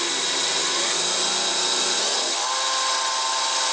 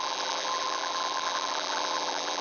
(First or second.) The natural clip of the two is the first